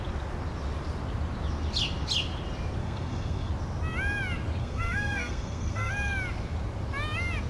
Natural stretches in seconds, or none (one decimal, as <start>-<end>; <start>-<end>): 0.0-2.8; 3.5-4.6; 5.9-7.5